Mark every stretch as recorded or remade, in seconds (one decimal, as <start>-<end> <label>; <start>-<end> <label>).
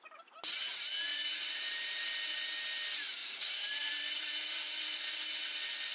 0.0-1.1 recorded; 1.1-2.0 remade; 2.0-3.2 recorded; 3.2-4.3 remade; 4.3-5.9 recorded